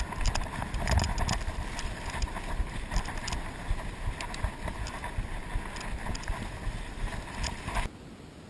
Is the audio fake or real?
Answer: real